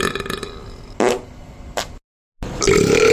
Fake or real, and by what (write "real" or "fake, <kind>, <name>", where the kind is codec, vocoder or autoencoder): real